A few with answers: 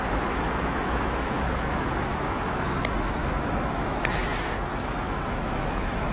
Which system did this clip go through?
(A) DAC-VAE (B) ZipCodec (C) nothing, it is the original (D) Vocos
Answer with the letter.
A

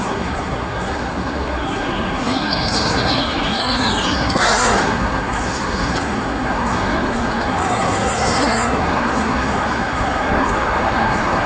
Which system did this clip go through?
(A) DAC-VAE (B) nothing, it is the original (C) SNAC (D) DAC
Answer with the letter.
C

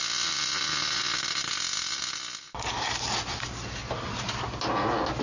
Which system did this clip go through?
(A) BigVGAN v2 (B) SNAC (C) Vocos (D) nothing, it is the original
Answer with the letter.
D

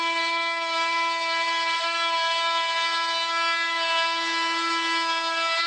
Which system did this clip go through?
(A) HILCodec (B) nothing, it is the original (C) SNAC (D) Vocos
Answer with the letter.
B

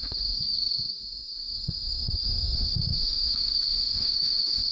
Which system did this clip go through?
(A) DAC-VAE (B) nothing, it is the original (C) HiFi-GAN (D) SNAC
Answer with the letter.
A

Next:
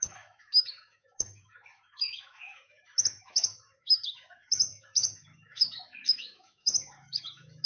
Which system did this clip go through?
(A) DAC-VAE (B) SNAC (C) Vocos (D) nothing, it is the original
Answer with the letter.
A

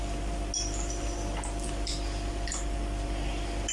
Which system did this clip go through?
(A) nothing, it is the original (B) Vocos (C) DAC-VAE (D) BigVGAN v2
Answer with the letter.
A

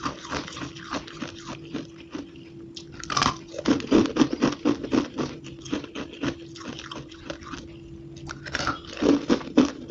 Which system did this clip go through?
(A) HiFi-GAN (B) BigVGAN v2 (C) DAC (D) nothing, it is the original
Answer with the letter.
D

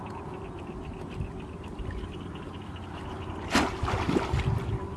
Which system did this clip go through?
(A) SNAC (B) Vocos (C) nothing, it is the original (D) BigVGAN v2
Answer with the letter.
C